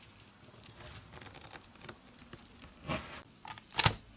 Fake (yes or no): no